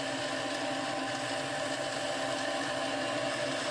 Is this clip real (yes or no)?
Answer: yes